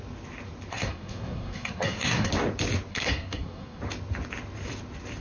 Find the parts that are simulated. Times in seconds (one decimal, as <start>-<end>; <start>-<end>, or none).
0.7-2.3; 2.9-3.8

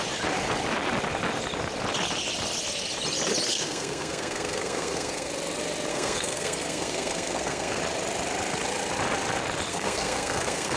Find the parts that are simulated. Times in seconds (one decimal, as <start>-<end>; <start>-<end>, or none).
3.5-5.3; 5.9-7.8; 9.7-10.8

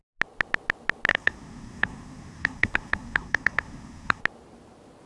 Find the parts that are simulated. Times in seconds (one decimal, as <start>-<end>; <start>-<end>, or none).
1.1-4.2

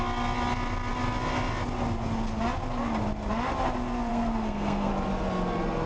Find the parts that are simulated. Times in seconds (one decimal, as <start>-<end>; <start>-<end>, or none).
4.1-4.9

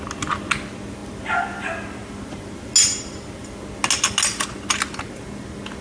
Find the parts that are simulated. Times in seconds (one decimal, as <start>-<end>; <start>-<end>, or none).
none

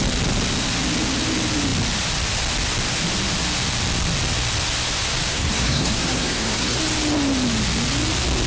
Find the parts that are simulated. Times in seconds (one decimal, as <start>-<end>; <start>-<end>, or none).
5.3-6.8